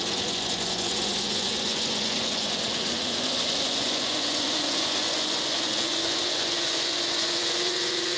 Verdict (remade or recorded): remade